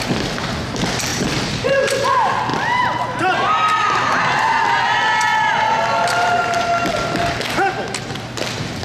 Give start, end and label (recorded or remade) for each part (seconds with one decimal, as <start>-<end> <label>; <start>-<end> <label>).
0.0-1.1 recorded; 1.1-1.7 remade; 1.7-8.8 recorded